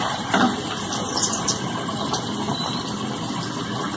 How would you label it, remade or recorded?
remade